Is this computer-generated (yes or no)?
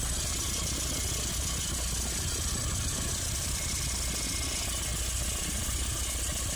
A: no